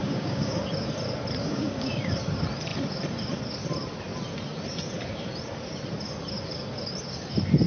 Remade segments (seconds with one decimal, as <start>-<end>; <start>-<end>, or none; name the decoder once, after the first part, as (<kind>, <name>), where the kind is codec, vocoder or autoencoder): 0.0-0.6 (codec, DAC); 1.4-2.1